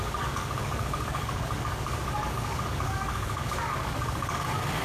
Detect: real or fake fake